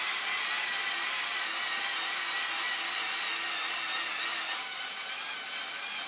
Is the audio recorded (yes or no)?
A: yes